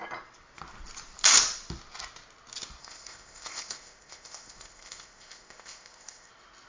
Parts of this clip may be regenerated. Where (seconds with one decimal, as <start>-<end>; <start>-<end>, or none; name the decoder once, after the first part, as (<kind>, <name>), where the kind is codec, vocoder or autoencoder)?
2.8-6.3 (codec, ZipCodec)

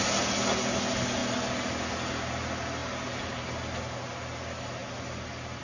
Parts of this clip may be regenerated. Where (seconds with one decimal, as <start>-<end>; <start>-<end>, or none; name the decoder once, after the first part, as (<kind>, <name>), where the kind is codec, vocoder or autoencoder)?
none

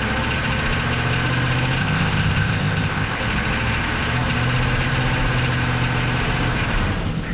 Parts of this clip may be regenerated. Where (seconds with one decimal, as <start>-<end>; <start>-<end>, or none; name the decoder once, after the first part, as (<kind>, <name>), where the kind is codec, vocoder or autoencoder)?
1.8-3.2 (codec, ZipCodec)

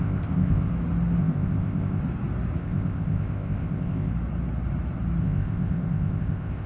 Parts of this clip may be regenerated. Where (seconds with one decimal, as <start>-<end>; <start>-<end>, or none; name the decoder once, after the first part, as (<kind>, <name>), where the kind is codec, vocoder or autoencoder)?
0.0-0.7 (codec, ZipCodec); 1.2-2.0; 2.6-4.1; 5.2-6.7